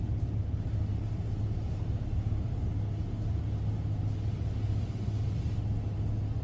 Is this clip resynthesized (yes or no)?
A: no